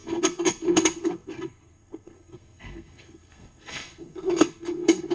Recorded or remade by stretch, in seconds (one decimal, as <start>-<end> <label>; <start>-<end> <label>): 0.0-5.1 remade